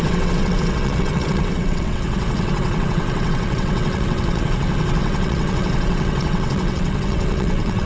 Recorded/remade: remade